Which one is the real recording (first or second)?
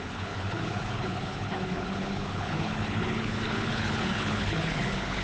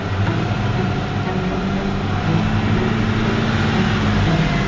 second